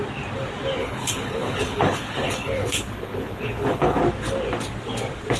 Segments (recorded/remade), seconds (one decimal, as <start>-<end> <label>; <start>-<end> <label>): 0.0-0.8 recorded; 0.8-4.0 remade; 4.0-5.4 recorded